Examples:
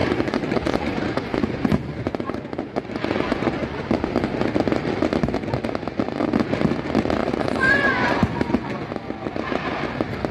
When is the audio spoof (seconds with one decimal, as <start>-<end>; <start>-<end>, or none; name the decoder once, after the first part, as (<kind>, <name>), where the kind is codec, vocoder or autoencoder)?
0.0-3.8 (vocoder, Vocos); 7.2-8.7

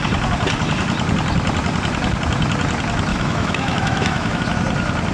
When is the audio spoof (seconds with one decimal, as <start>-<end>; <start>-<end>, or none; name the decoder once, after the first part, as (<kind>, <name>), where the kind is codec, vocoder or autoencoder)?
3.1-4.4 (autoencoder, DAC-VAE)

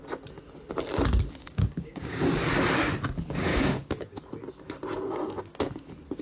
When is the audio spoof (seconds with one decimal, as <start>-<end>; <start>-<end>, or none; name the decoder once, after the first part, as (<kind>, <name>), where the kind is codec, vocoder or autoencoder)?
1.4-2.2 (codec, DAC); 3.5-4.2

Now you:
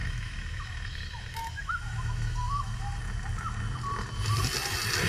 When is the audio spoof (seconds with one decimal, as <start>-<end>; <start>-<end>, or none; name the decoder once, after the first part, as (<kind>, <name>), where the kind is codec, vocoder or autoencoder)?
0.0-3.0 (autoencoder, DAC-VAE)

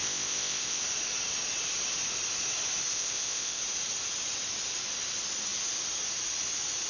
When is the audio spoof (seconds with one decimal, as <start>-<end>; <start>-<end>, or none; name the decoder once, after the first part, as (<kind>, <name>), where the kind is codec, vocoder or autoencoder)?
0.0-0.8 (codec, ZipCodec); 2.9-3.6

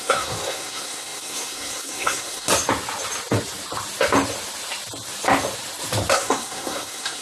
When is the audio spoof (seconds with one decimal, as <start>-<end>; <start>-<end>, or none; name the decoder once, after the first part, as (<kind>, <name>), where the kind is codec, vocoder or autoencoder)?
0.0-2.5 (codec, SNAC); 6.1-7.2